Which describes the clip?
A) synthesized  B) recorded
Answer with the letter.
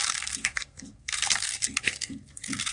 A